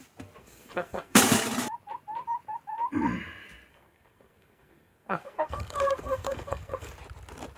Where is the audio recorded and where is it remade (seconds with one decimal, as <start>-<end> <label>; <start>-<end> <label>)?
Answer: 0.0-0.4 recorded; 0.4-1.2 remade; 1.2-3.7 recorded; 3.7-6.9 remade; 6.9-7.6 recorded